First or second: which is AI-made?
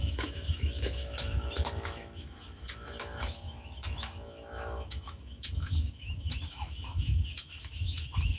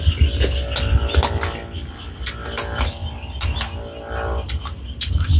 first